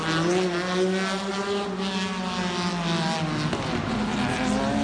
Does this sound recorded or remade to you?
recorded